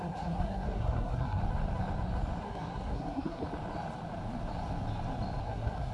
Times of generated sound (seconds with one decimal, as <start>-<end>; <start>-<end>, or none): 0.0-1.4; 2.4-3.4; 5.4-5.9